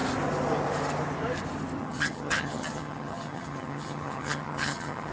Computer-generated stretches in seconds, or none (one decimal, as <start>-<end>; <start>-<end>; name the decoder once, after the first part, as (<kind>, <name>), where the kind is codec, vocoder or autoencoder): 1.8-5.1 (vocoder, HiFi-GAN)